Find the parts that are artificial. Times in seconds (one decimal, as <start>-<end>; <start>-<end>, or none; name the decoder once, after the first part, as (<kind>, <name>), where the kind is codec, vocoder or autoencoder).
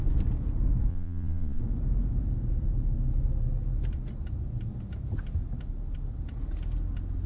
0.9-1.6 (vocoder, Vocos)